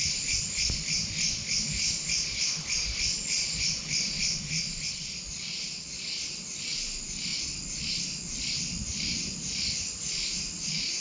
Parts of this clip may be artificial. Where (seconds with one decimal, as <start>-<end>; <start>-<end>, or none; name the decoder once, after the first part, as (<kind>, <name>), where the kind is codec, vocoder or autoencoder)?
none